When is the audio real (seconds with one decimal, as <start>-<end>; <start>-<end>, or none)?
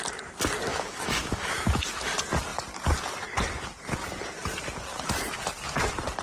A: 0.0-0.7; 2.1-6.2